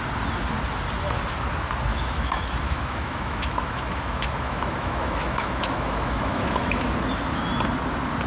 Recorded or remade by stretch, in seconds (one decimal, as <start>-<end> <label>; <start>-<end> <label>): 0.0-1.9 recorded; 1.9-6.9 remade; 6.9-8.3 recorded